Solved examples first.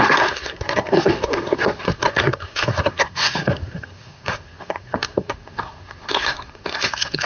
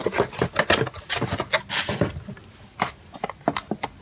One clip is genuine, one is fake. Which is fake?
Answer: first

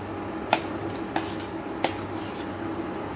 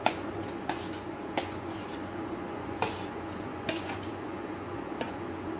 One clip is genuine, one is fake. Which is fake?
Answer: second